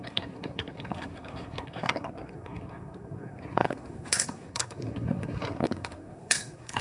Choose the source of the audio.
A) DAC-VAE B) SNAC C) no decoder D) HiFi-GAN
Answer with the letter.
B